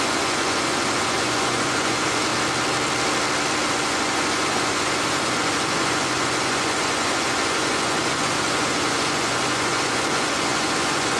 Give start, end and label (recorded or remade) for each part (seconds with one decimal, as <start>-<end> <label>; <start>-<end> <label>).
0.0-2.3 remade; 2.3-3.7 recorded; 3.7-11.2 remade

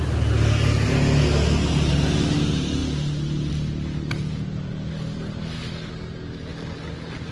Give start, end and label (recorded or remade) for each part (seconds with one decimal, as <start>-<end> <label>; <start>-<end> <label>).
0.0-4.2 recorded; 4.2-4.9 remade; 4.9-7.3 recorded

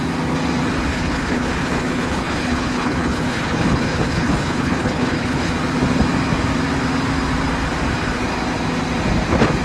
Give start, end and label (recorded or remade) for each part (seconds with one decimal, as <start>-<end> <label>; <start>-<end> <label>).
0.0-0.9 recorded; 0.9-5.5 remade; 5.5-9.6 recorded

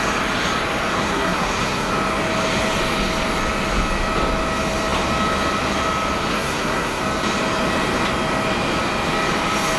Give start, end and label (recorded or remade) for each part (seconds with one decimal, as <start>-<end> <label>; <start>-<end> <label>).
0.0-0.9 recorded; 0.9-1.9 remade; 1.9-6.3 recorded; 6.3-7.0 remade; 7.0-9.8 recorded

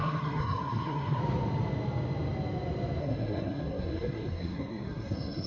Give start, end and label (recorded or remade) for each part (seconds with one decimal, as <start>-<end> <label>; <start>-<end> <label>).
0.0-1.2 remade; 1.2-3.0 recorded; 3.0-5.5 remade

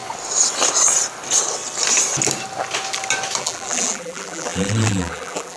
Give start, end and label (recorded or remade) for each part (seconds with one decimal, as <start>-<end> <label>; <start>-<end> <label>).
0.0-3.4 recorded; 3.4-5.6 remade

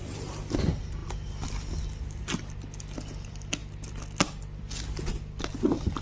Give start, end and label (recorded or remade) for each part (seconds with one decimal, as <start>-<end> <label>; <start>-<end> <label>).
0.0-6.0 recorded